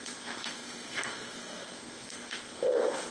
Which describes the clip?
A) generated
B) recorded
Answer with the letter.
A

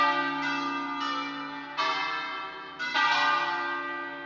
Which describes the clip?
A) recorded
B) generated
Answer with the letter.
A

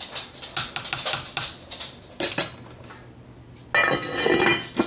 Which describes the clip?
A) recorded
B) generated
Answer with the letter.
A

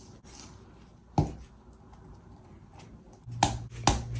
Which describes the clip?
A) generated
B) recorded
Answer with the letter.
B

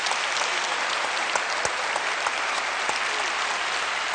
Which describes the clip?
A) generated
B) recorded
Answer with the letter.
B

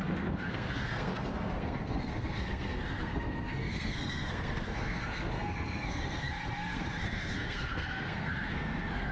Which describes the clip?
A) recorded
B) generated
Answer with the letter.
B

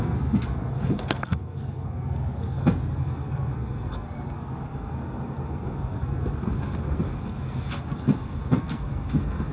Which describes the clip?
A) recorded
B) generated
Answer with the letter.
B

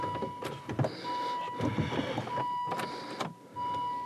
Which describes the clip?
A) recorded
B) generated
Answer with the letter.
A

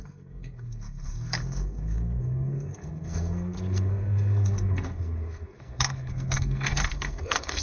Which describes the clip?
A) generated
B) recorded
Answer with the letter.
A